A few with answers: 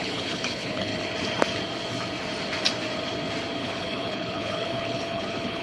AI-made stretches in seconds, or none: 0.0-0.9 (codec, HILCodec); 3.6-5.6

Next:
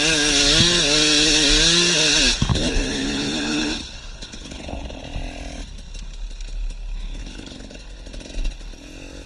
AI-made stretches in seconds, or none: 2.5-5.0 (codec, HILCodec); 7.2-7.8

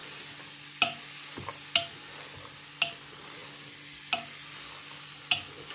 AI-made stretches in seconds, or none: none